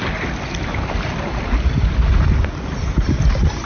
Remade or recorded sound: recorded